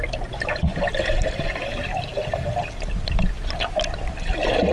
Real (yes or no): yes